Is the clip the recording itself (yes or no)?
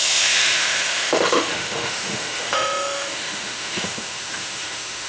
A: no